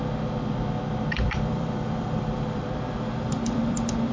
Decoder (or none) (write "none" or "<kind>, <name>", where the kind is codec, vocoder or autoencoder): vocoder, BigVGAN v2